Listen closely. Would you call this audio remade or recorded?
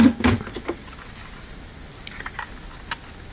recorded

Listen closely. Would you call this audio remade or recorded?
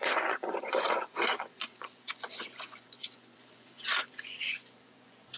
remade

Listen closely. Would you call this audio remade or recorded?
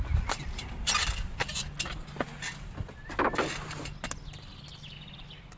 recorded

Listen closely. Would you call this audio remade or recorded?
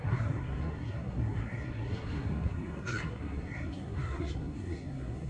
remade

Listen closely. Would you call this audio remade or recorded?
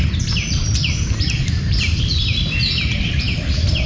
recorded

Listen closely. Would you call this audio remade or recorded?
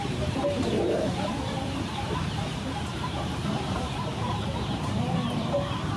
remade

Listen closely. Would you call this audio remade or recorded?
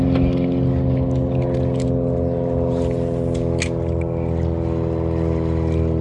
recorded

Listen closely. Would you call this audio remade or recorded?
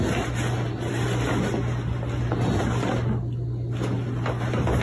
recorded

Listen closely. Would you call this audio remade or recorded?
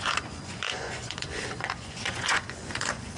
remade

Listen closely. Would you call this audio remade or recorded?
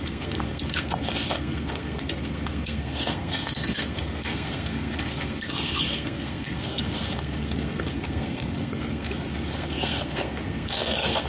remade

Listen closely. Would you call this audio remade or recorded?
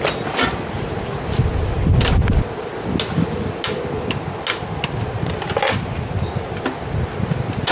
recorded